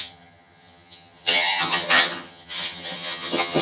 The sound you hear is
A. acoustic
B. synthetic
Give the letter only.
B